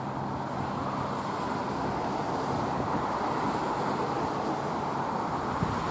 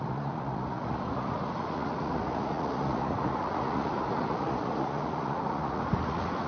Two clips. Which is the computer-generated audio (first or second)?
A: second